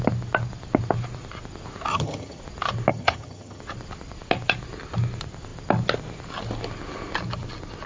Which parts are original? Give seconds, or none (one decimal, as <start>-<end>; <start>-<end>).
0.0-1.9; 2.4-2.9; 3.6-7.9